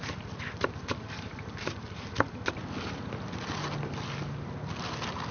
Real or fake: real